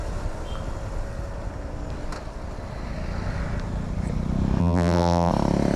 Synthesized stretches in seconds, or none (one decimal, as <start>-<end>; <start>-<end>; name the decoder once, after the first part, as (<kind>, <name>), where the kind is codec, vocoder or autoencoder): 4.6-5.3 (vocoder, BigVGAN v2)